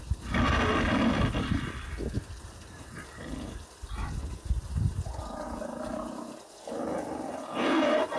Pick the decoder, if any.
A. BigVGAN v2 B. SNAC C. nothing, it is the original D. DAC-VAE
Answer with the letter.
C